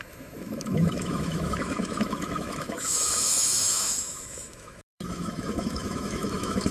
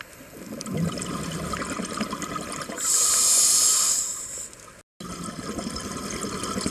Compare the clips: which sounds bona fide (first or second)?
second